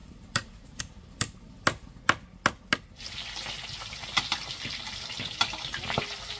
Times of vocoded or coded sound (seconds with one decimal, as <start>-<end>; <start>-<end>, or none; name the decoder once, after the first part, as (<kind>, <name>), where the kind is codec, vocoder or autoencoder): 0.0-0.8 (vocoder, BigVGAN v2)